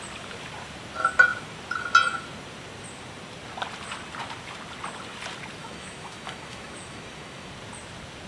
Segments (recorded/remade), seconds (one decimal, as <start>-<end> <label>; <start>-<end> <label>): 0.0-5.6 recorded; 5.6-7.5 remade; 7.5-8.3 recorded